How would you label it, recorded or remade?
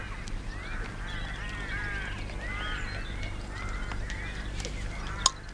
recorded